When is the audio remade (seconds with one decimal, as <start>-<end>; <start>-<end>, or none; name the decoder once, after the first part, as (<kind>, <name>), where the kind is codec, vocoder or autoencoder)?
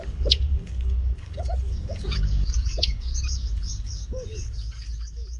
0.0-5.4 (codec, DAC)